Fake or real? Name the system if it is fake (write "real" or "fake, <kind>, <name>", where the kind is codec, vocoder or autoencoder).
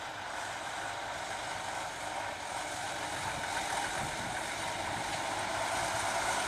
real